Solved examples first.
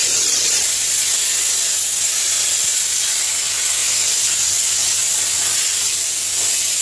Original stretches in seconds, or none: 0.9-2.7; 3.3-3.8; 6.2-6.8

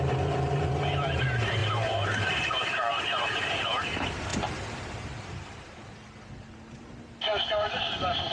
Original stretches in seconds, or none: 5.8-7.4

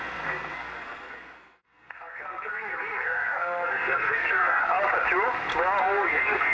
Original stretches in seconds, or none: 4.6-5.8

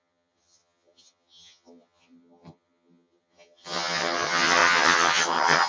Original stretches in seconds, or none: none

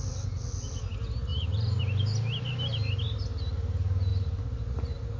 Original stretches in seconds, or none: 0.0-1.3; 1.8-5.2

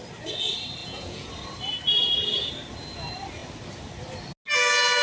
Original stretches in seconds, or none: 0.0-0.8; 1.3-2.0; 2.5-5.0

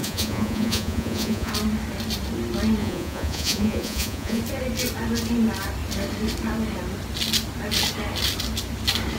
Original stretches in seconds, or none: 1.5-2.8; 4.4-9.2

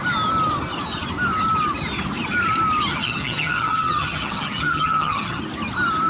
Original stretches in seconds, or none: 0.0-2.9; 5.4-6.1